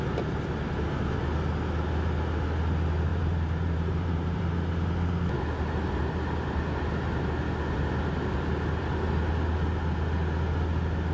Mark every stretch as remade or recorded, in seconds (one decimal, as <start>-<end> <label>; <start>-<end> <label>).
0.0-3.1 recorded; 3.1-4.4 remade; 4.4-11.1 recorded